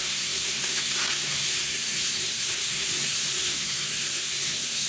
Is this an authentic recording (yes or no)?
no